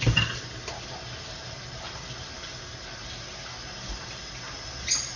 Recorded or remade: recorded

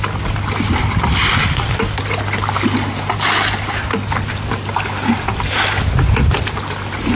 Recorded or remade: recorded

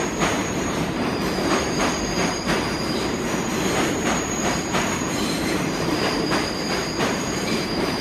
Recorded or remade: remade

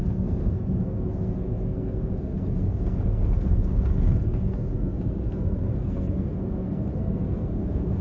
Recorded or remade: remade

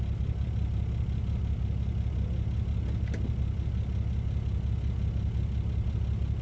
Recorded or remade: recorded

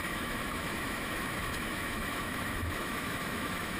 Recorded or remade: remade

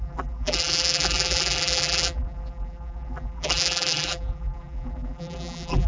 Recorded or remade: remade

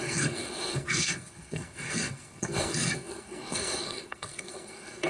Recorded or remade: remade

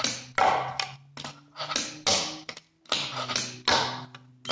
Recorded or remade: recorded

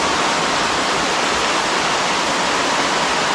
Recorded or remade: recorded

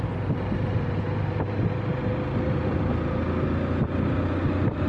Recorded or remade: recorded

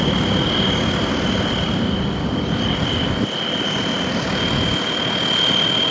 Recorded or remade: recorded